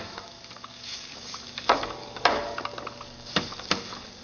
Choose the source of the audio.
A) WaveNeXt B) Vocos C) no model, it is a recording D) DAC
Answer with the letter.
D